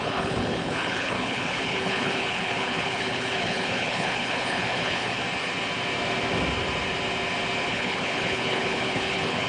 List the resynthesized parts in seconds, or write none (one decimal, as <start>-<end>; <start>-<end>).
0.0-5.2; 7.7-9.5